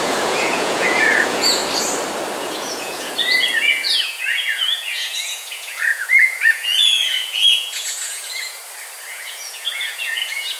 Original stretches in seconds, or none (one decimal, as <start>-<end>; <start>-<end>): 1.6-2.4; 8.6-9.1